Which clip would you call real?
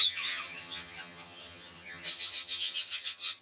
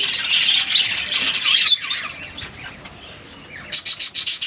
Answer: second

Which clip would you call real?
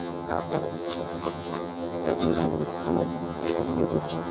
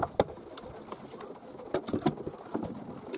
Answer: second